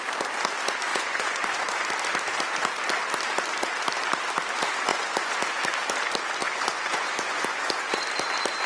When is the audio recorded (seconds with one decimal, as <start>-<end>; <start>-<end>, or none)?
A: 0.0-0.9; 1.8-4.9; 5.5-6.4; 7.9-8.7